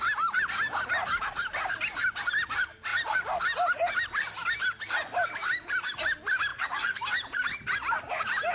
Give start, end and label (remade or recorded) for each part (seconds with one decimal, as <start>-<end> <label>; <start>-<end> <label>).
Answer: 0.0-6.5 recorded; 6.5-7.0 remade; 7.0-8.5 recorded